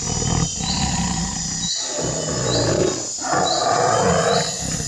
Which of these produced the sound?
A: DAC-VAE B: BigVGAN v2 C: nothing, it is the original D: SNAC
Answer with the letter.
C